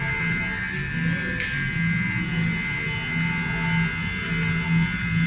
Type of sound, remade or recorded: recorded